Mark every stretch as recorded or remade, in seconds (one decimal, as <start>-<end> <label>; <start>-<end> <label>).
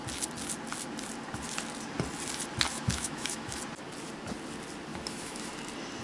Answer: 0.0-2.7 recorded; 2.7-3.6 remade; 3.6-4.9 recorded; 4.9-5.5 remade; 5.5-6.0 recorded